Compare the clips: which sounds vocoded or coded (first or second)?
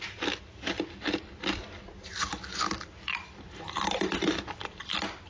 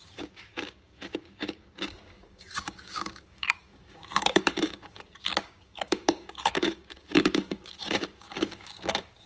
second